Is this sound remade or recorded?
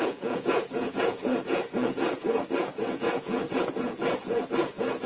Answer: remade